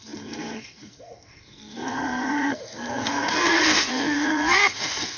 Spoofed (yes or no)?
yes